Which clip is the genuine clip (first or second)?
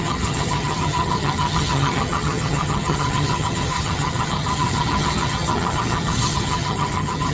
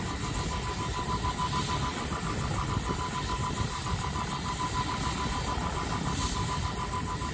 second